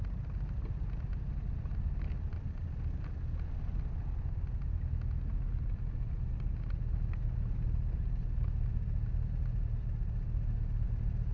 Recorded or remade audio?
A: recorded